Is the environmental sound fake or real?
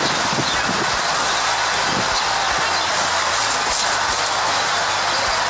real